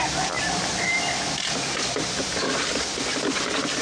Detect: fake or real real